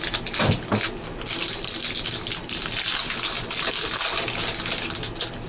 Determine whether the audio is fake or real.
real